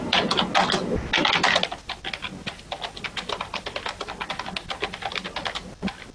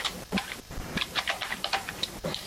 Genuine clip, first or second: first